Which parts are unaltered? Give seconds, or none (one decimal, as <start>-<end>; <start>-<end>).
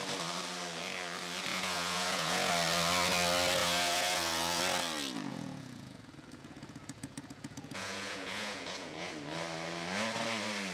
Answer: 0.0-1.5; 2.5-3.6; 4.6-5.3; 9.1-10.7